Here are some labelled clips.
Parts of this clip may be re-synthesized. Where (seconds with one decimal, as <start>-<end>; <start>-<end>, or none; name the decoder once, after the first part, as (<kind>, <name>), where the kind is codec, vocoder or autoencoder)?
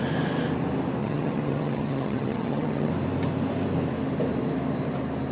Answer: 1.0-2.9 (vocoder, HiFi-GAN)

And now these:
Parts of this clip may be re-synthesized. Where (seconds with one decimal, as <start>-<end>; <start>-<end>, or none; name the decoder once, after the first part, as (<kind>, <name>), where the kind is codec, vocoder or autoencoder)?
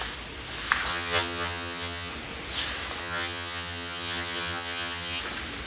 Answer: 0.9-2.1 (vocoder, HiFi-GAN); 3.0-5.2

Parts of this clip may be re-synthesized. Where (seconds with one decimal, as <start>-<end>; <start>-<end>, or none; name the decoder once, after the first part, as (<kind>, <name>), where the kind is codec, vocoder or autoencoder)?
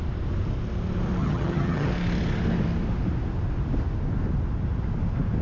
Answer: 1.2-1.9 (vocoder, HiFi-GAN)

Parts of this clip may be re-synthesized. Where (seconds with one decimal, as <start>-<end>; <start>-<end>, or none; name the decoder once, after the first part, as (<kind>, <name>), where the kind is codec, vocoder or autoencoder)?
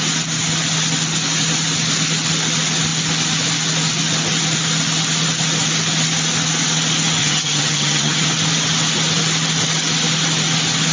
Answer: 7.2-8.3 (vocoder, HiFi-GAN)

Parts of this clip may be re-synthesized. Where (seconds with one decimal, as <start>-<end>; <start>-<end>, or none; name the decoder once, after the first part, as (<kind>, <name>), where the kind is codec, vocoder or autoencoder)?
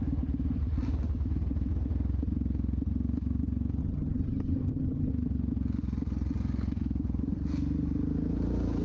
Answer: 3.8-5.1 (vocoder, HiFi-GAN)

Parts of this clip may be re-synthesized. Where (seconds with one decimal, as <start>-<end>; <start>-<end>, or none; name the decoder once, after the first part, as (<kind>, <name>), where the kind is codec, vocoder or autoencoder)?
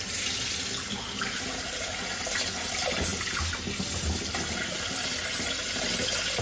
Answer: none